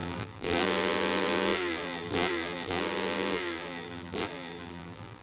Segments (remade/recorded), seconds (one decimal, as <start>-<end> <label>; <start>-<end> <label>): 0.0-5.2 remade